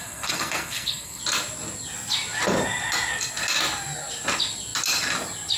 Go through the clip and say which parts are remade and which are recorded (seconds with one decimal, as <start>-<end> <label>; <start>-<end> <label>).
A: 0.0-1.2 remade; 1.2-5.6 recorded